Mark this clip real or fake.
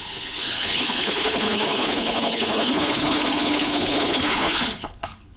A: fake